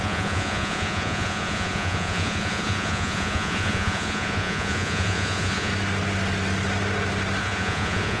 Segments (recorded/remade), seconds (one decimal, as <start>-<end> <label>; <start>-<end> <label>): 0.0-5.7 remade; 5.7-7.4 recorded; 7.4-8.2 remade